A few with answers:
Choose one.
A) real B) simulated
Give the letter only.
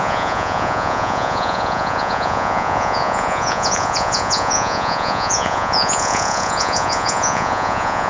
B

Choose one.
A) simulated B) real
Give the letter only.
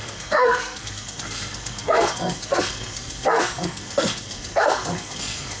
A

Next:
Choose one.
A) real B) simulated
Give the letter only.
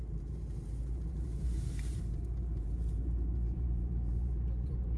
B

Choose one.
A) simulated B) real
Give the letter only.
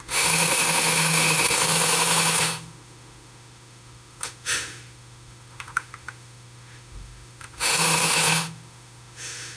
A